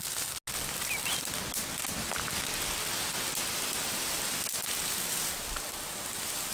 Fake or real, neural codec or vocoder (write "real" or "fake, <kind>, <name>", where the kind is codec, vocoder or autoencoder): real